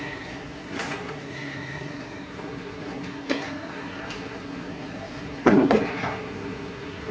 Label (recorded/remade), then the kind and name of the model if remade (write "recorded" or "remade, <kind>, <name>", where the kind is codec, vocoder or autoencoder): remade, codec, SNAC